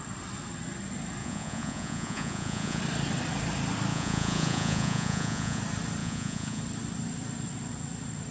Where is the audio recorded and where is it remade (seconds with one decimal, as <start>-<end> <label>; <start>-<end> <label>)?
0.0-1.2 recorded; 1.2-2.8 remade; 2.8-3.9 recorded; 3.9-5.6 remade; 5.6-6.0 recorded; 6.0-6.6 remade; 6.6-8.3 recorded